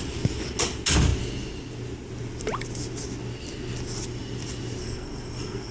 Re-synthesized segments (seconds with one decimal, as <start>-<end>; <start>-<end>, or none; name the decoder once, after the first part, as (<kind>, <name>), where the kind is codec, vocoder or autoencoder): 4.8-5.7 (codec, SNAC)